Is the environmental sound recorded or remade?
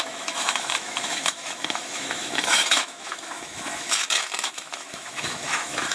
remade